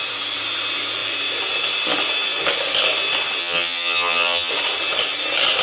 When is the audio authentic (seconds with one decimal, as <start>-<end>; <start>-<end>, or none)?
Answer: 0.0-3.4; 4.5-5.6

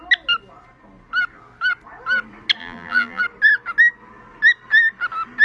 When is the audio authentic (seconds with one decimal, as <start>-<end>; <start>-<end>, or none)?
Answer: 0.0-2.6; 3.2-5.4

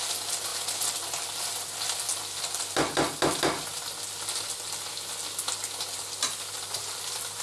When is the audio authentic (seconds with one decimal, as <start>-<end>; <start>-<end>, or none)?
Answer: 0.0-7.4